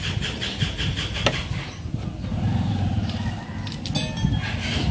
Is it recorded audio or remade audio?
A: recorded